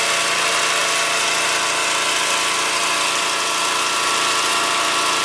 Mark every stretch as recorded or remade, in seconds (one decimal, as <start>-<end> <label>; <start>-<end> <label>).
0.0-5.2 recorded